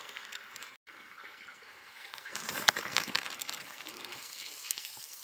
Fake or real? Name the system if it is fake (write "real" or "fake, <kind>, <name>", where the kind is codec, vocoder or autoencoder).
fake, codec, SNAC